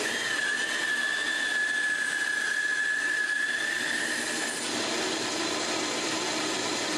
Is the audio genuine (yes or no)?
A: yes